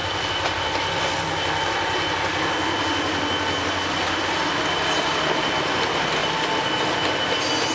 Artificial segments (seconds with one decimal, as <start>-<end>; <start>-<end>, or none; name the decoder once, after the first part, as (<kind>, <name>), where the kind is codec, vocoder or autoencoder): 0.0-4.2 (vocoder, BigVGAN v2); 6.2-7.1

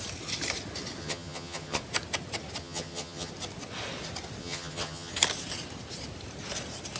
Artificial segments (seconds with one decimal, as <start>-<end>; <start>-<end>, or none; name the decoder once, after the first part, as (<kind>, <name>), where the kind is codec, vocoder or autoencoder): 1.0-1.8 (vocoder, HiFi-GAN); 2.6-3.3; 4.4-5.1

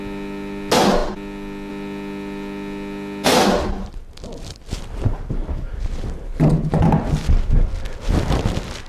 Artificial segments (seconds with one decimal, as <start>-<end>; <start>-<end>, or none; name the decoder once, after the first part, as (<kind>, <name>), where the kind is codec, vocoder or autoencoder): none

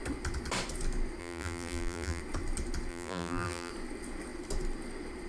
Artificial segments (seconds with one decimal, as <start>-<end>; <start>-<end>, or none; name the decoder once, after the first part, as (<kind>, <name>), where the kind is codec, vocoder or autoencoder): 1.2-2.2 (vocoder, BigVGAN v2); 2.9-3.7

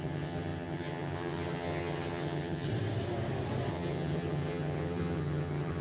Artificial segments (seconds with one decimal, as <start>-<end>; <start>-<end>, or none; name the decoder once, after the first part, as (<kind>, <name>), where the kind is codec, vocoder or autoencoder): 0.0-2.7 (vocoder, HiFi-GAN); 3.7-5.8